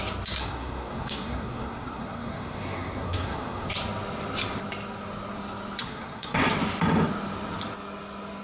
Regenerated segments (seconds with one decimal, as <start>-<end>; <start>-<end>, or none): 0.4-3.7; 5.8-6.4